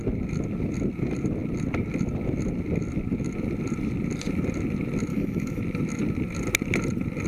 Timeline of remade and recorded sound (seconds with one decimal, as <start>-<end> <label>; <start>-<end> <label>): 0.0-5.1 recorded; 5.1-5.6 remade; 5.6-7.3 recorded